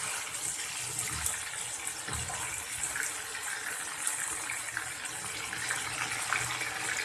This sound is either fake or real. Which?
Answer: real